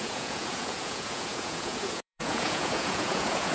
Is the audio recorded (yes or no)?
no